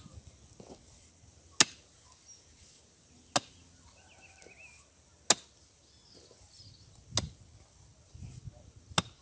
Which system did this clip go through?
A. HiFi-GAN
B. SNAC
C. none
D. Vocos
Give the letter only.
C